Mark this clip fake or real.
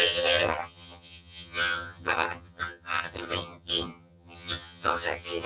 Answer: fake